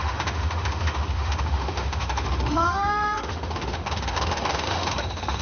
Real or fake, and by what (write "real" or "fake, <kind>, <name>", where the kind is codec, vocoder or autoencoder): fake, autoencoder, DAC-VAE